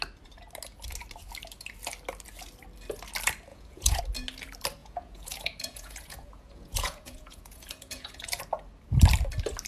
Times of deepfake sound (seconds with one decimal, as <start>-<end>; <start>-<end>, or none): 3.5-4.0; 4.8-8.4